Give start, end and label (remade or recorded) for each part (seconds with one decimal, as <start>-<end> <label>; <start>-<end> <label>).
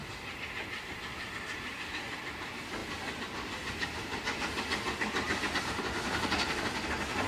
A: 0.0-2.8 recorded; 2.8-5.8 remade; 5.8-7.3 recorded